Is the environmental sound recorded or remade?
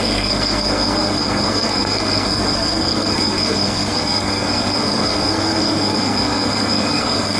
remade